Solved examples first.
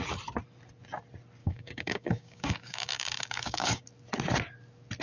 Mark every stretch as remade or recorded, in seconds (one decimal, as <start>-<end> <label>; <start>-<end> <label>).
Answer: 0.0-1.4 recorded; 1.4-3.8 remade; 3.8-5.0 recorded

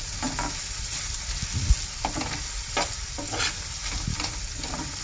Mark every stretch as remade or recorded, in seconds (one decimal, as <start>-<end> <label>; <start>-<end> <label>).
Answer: 0.0-5.0 recorded

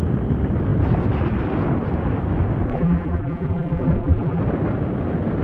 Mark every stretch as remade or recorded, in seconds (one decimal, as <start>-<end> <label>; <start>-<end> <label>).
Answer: 0.0-2.7 recorded; 2.7-4.4 remade; 4.4-5.4 recorded

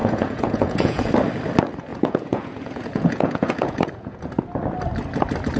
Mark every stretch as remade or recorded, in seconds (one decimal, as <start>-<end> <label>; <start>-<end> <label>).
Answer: 0.0-1.1 remade; 1.1-1.9 recorded; 1.9-4.3 remade; 4.3-5.6 recorded

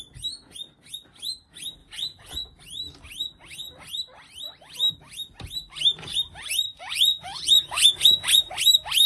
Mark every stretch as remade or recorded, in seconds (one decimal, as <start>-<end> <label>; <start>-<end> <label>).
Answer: 0.0-1.8 recorded; 1.8-2.6 remade; 2.6-6.7 recorded; 6.7-8.5 remade; 8.5-9.1 recorded

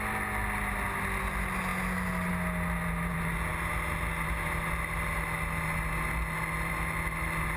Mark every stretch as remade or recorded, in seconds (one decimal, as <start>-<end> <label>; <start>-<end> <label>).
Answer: 0.0-7.6 recorded

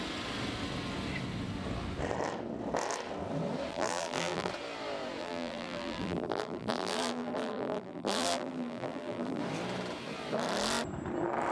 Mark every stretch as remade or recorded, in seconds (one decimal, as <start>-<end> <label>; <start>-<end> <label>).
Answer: 0.0-3.7 recorded; 3.7-4.5 remade; 4.5-5.2 recorded; 5.2-9.4 remade; 9.4-11.5 recorded

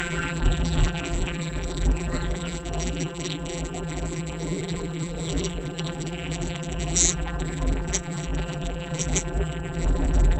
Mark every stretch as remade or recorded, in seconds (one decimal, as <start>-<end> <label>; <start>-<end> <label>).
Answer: 0.0-10.4 remade